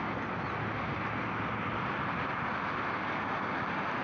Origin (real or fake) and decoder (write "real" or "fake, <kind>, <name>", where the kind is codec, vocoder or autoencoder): real